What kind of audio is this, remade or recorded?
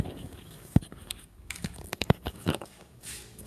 remade